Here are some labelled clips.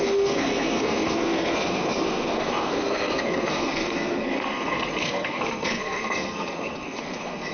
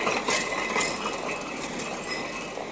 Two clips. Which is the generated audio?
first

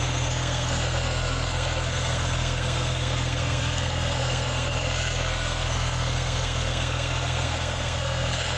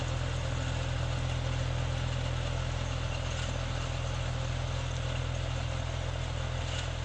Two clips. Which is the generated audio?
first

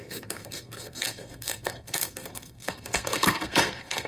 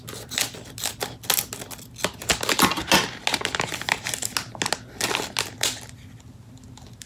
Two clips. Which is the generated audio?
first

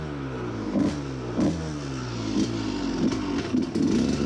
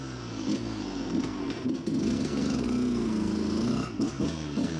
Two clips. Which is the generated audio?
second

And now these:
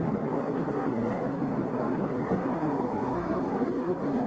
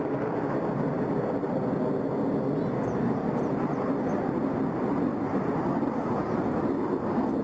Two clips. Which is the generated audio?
first